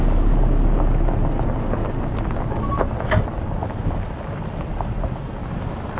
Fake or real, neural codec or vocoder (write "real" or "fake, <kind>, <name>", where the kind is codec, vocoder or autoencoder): real